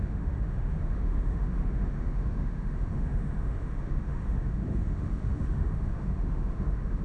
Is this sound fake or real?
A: fake